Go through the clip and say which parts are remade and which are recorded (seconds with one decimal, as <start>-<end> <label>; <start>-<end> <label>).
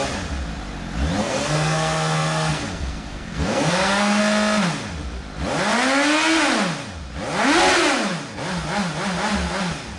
0.0-1.2 recorded; 1.2-4.2 remade; 4.2-10.0 recorded